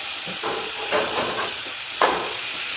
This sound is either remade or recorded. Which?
remade